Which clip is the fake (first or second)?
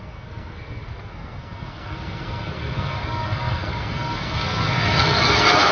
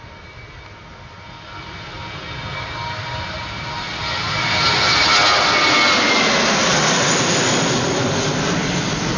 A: first